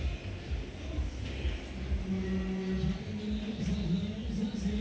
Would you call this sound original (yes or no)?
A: yes